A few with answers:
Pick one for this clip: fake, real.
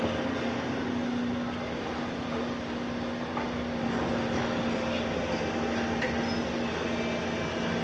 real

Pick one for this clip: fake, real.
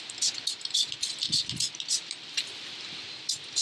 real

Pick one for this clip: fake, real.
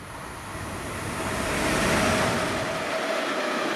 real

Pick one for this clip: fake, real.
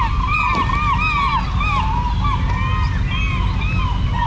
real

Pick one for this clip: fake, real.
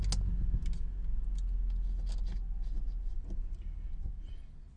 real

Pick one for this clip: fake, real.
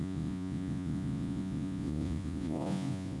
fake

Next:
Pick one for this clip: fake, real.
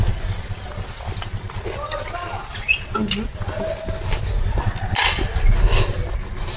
real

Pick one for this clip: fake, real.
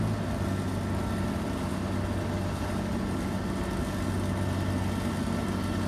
real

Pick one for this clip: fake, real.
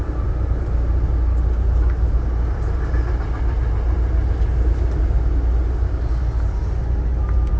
real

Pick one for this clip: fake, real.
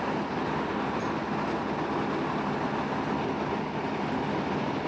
real